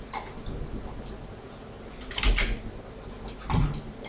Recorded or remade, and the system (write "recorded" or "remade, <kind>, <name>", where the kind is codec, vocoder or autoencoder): recorded